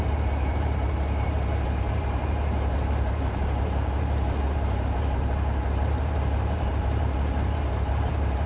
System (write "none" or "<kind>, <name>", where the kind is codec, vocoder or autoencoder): vocoder, BigVGAN v2